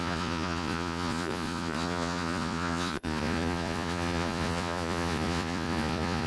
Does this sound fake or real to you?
fake